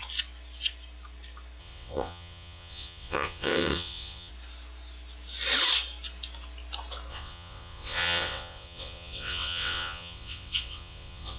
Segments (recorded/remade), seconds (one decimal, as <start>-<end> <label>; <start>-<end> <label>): 0.0-1.6 recorded; 1.6-4.3 remade; 4.3-7.1 recorded; 7.1-11.4 remade